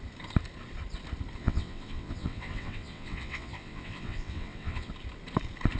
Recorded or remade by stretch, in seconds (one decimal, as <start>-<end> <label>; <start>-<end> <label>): 0.0-1.4 recorded; 1.4-4.9 remade; 4.9-5.8 recorded